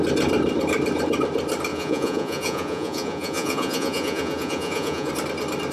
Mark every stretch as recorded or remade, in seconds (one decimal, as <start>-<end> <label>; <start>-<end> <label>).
0.0-1.7 recorded; 1.7-5.1 remade; 5.1-5.7 recorded